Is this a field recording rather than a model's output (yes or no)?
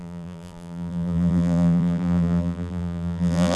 no